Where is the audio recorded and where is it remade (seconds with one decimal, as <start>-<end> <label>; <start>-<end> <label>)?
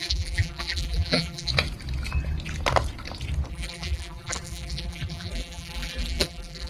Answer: 0.0-1.5 remade; 1.5-3.5 recorded; 3.5-6.7 remade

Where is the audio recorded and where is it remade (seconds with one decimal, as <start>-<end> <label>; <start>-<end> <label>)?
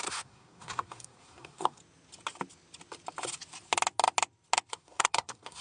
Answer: 0.0-1.8 remade; 1.8-4.7 recorded; 4.7-5.6 remade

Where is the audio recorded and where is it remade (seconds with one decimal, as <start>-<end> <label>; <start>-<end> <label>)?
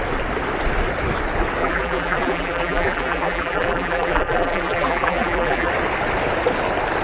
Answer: 0.0-1.6 recorded; 1.6-5.7 remade; 5.7-7.0 recorded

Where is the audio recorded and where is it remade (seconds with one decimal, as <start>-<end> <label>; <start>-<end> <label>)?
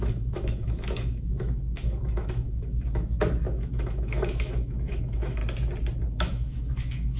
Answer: 0.0-5.4 remade; 5.4-6.1 recorded; 6.1-7.2 remade